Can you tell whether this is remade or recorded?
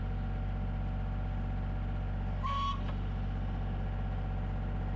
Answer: recorded